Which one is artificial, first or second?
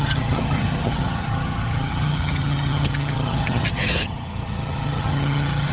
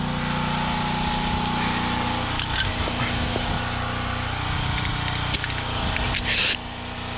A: first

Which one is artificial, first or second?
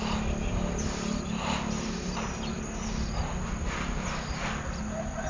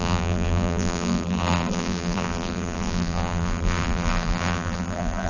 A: second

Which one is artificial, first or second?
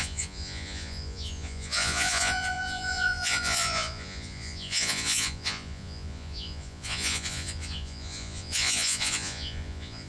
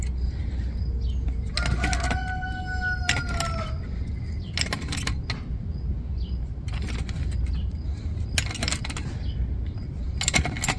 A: first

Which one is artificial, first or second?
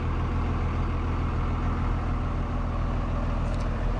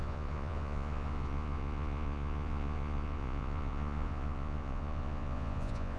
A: second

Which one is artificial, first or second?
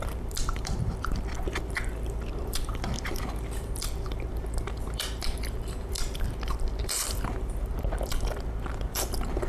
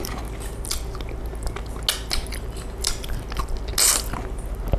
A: first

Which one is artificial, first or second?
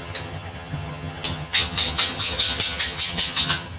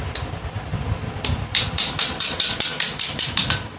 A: first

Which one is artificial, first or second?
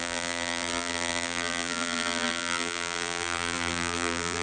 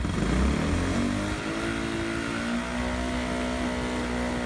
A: first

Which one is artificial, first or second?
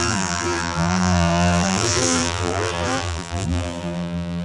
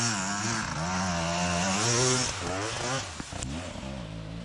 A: first